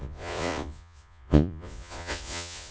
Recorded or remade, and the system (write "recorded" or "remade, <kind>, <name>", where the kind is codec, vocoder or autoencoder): remade, vocoder, Vocos